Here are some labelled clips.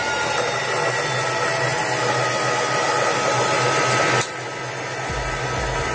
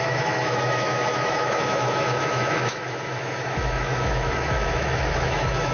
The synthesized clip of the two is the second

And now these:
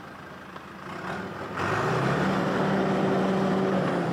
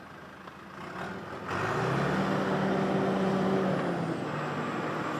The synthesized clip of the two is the first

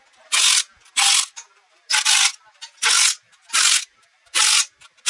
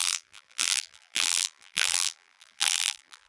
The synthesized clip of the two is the second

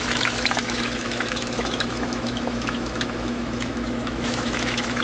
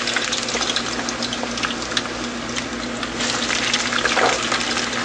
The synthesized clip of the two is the first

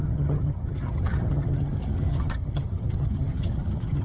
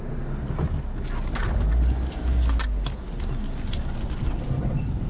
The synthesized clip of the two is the first